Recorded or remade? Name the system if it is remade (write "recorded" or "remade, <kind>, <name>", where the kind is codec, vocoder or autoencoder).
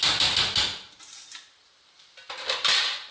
recorded